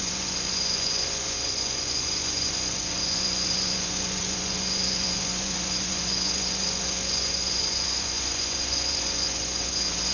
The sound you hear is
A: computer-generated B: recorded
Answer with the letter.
A